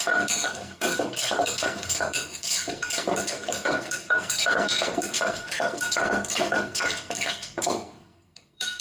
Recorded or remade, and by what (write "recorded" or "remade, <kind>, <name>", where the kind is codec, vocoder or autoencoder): remade, codec, SNAC